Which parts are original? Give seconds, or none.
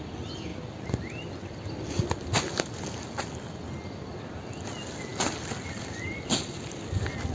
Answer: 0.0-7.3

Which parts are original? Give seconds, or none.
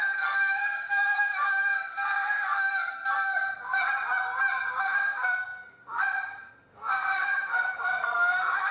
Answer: 3.8-4.8